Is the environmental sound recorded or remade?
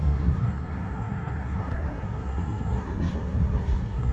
remade